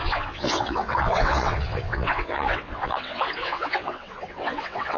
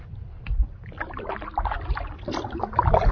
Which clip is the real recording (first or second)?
second